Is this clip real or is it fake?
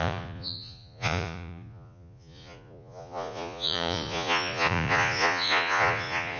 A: fake